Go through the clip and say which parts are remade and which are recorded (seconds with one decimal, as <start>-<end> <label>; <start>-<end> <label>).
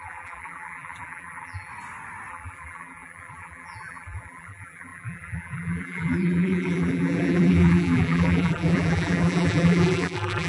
0.0-1.7 remade; 1.7-2.3 recorded; 2.3-10.5 remade